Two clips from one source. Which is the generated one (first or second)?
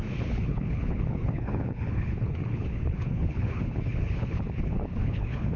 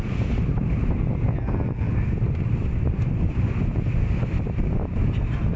first